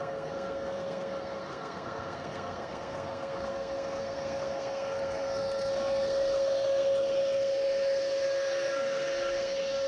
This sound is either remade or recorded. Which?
remade